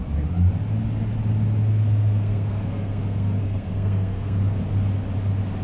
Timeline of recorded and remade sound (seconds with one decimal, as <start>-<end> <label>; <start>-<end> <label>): 0.0-1.7 recorded; 1.7-4.6 remade; 4.6-5.6 recorded